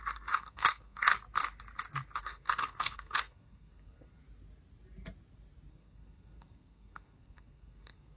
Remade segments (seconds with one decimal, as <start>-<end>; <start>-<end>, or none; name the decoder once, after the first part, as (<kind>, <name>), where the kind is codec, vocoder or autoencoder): 0.0-1.1 (codec, SNAC); 2.2-4.2; 5.7-8.2